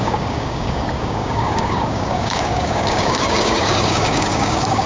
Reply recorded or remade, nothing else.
remade